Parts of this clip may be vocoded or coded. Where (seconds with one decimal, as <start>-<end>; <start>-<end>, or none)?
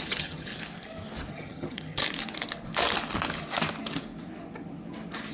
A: 0.0-0.5; 1.3-2.0